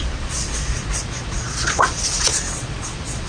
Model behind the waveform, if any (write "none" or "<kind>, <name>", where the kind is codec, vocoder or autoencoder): vocoder, Vocos